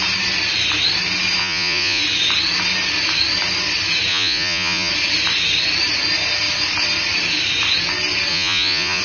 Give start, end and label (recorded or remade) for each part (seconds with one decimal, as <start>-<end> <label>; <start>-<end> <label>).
0.0-1.4 recorded; 1.4-2.0 remade; 2.0-4.1 recorded; 4.1-4.9 remade; 4.9-8.3 recorded; 8.3-9.0 remade